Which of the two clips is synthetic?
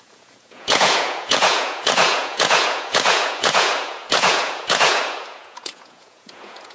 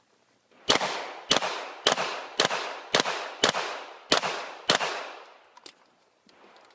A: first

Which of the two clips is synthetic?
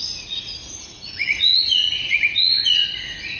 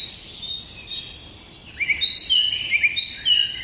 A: first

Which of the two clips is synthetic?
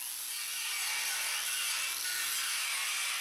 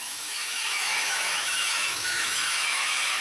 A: second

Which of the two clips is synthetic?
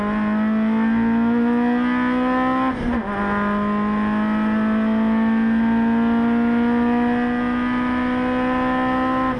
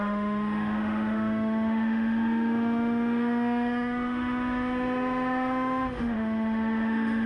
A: second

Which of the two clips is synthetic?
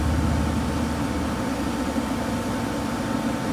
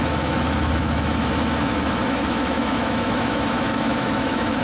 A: second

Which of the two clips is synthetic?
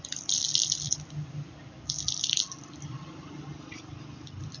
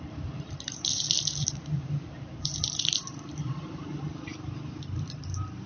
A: second